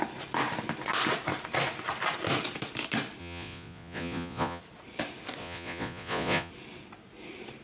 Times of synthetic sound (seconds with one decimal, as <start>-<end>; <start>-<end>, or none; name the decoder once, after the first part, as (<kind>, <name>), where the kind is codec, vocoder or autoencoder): 3.2-4.6 (vocoder, Vocos); 5.4-6.5